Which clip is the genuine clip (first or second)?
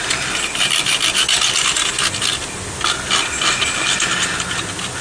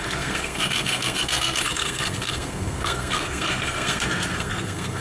first